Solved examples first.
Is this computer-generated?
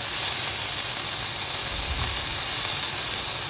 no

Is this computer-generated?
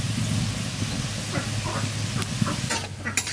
no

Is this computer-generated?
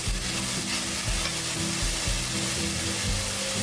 no